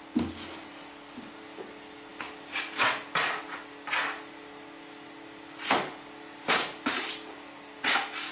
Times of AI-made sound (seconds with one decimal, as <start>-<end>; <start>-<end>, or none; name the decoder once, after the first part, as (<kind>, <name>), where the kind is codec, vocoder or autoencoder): none